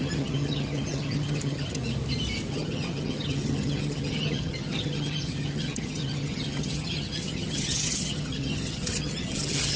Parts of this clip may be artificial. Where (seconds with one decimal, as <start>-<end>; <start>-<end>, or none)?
0.0-1.8; 2.5-9.8